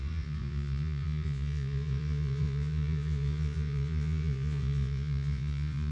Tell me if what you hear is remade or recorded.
remade